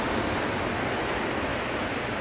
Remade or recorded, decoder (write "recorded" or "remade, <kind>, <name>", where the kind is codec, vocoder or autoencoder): recorded